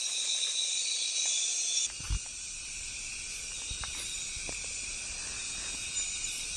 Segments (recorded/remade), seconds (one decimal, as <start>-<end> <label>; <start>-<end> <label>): 0.0-5.3 recorded; 5.3-5.9 remade; 5.9-6.6 recorded